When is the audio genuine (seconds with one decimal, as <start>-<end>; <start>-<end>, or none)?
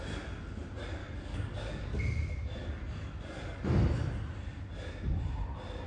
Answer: 0.0-1.0; 2.0-2.6; 3.6-5.9